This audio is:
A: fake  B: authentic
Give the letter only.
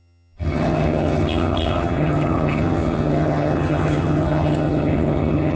A